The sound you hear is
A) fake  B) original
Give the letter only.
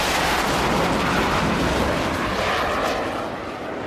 B